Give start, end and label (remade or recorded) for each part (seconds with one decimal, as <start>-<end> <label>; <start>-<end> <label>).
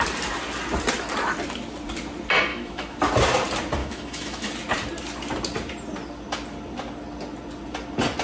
0.0-2.5 recorded; 2.5-3.0 remade; 3.0-3.8 recorded; 3.8-4.5 remade; 4.5-8.2 recorded